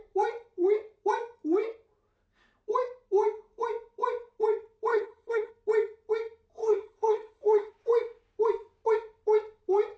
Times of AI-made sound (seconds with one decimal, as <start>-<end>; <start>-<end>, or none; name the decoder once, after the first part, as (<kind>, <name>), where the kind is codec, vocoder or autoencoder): 4.9-5.5 (codec, HILCodec); 6.6-7.7